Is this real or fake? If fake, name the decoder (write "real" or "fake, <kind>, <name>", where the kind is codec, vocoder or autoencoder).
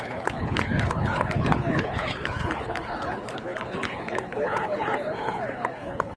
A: fake, codec, HILCodec